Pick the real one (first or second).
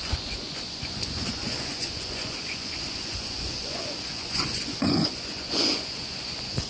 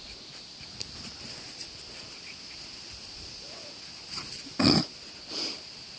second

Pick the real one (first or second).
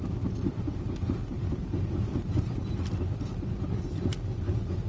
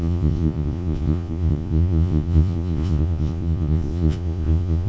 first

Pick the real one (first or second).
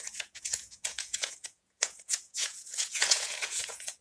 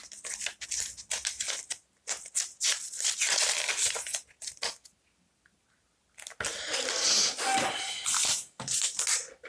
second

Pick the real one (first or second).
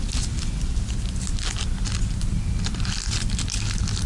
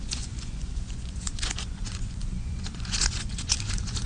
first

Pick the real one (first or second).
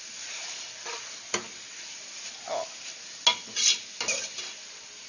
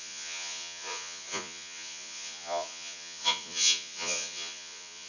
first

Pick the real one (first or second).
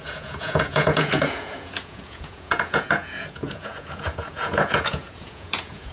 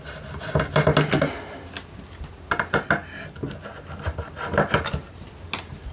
second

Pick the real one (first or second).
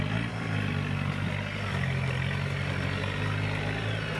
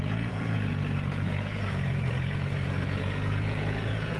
first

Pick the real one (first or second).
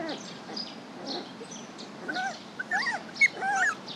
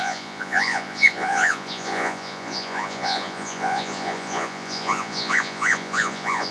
first